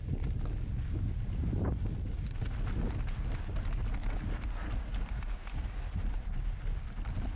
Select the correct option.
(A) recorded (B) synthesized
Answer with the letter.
A